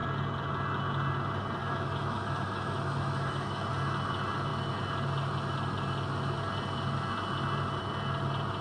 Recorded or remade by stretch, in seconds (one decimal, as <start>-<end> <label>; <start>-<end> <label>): 0.0-1.6 recorded; 1.6-3.7 remade; 3.7-8.6 recorded